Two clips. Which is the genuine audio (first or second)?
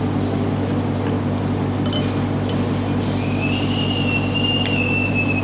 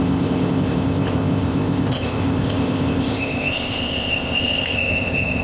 first